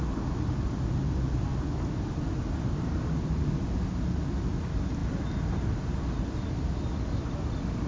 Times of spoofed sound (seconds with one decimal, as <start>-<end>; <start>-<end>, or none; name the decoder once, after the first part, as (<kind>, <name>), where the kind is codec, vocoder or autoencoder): 0.0-1.5 (vocoder, BigVGAN v2); 3.5-5.0